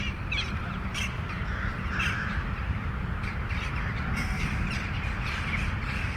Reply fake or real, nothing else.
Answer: fake